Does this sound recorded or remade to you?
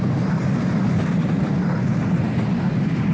recorded